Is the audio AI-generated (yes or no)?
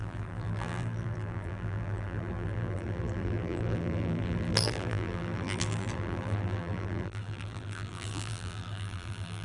yes